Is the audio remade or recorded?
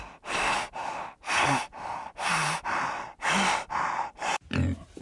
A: recorded